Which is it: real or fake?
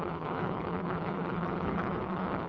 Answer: fake